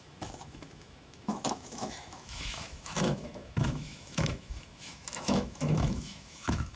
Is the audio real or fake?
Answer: fake